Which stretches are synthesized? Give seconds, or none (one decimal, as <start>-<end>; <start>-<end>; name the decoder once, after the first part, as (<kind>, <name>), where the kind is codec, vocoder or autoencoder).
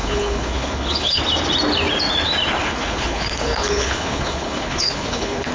0.0-1.2 (codec, HILCodec); 2.6-5.5